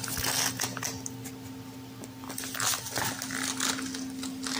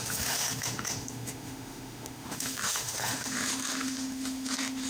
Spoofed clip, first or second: second